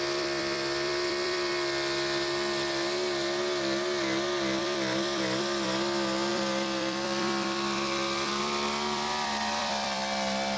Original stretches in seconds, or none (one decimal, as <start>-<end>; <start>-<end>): 1.5-4.6; 10.0-10.6